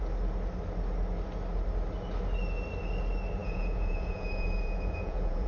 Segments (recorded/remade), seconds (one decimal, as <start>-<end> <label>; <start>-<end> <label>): 0.0-3.4 recorded; 3.4-5.5 remade